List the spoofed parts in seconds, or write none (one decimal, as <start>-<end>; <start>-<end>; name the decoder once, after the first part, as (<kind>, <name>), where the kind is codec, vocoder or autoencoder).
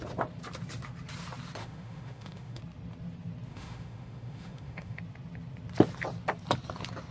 1.6-2.6 (autoencoder, DAC-VAE); 3.5-5.0